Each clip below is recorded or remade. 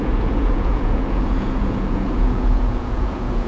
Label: remade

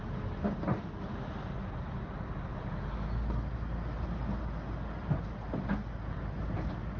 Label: recorded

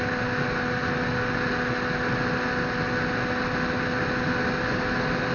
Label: recorded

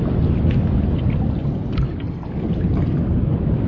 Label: recorded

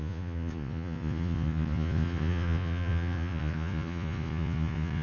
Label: remade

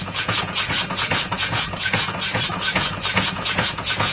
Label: remade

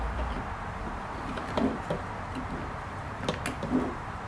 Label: recorded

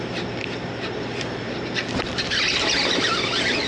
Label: recorded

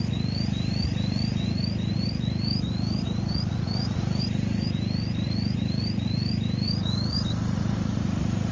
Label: remade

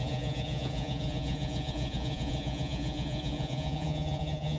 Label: remade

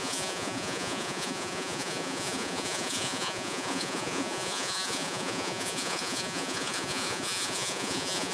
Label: remade